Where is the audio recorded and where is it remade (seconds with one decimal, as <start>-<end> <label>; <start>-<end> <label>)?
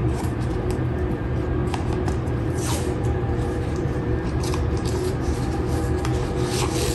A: 0.0-0.8 remade; 0.8-1.6 recorded; 1.6-5.4 remade; 5.4-6.9 recorded